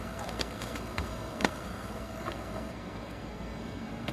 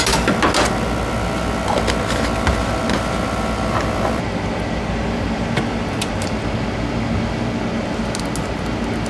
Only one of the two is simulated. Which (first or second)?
first